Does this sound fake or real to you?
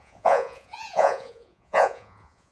fake